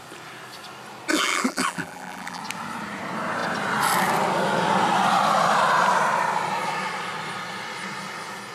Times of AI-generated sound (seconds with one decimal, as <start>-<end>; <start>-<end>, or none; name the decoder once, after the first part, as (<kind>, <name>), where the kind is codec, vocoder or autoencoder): 1.1-2.4 (vocoder, BigVGAN v2)